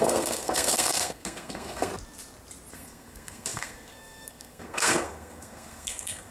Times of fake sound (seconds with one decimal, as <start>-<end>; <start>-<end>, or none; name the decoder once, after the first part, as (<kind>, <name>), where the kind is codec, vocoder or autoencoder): 0.0-1.9 (codec, SNAC); 2.7-6.3